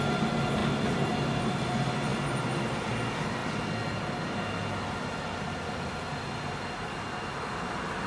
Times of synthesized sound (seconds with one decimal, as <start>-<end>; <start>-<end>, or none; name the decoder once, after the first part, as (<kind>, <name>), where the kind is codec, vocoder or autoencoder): none